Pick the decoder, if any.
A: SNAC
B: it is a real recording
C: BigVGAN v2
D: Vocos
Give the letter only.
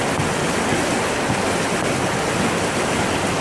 B